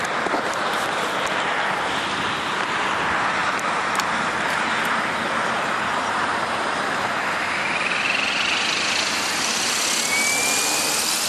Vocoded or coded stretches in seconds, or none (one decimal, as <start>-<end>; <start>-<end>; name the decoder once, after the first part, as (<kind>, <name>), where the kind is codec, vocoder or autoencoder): 3.4-4.9 (vocoder, BigVGAN v2)